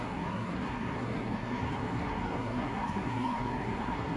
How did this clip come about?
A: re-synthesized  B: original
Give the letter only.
A